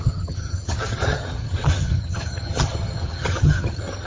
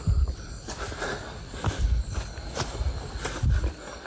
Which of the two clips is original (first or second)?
second